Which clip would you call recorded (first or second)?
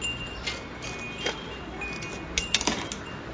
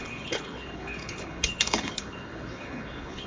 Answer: first